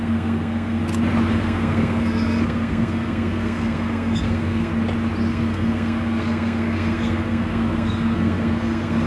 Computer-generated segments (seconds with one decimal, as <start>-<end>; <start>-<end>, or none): 0.0-0.8; 1.3-4.7; 5.3-9.1